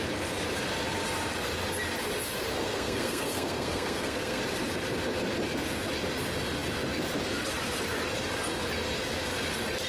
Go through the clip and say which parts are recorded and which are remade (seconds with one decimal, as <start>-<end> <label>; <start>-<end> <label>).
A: 0.0-2.5 recorded; 2.5-4.4 remade; 4.4-9.9 recorded